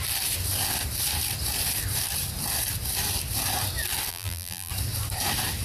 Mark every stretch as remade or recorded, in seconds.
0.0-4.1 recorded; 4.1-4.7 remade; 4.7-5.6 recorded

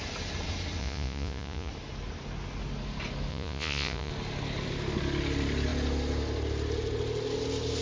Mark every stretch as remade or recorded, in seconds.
0.0-0.8 recorded; 0.8-1.7 remade; 1.7-3.3 recorded; 3.3-4.1 remade; 4.1-7.8 recorded